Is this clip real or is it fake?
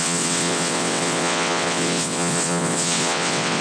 fake